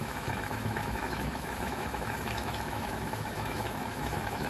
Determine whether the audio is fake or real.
fake